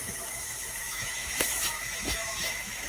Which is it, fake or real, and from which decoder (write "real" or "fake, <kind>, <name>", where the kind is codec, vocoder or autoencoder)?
fake, autoencoder, DAC-VAE